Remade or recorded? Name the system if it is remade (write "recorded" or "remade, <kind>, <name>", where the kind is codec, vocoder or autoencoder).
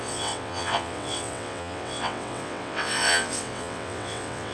remade, vocoder, WaveNeXt